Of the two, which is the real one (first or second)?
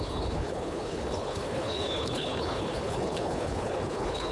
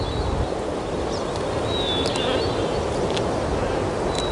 second